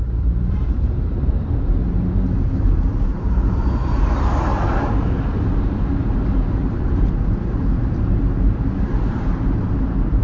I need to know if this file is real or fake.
fake